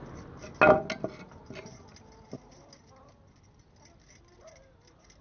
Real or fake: real